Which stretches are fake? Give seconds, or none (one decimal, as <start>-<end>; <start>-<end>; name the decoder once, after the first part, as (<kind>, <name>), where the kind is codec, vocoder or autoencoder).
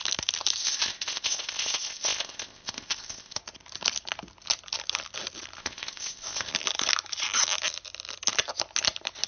0.6-3.4 (codec, ZipCodec); 5.6-6.5